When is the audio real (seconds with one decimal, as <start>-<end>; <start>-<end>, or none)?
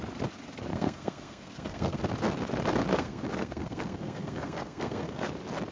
0.0-0.7; 2.0-2.9; 5.3-5.7